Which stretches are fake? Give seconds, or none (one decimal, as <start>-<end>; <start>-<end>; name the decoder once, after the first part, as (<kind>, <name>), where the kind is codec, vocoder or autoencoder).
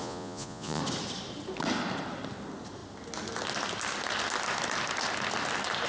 0.0-0.8 (vocoder, Vocos)